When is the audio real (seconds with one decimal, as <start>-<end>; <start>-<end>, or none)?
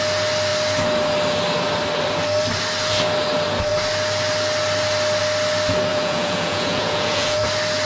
0.0-5.9; 7.4-7.9